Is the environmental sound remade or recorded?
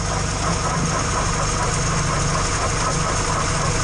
recorded